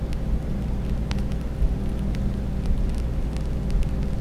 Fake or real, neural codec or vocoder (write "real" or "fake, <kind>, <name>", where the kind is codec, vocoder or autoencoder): real